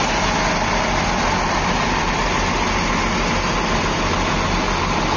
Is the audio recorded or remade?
recorded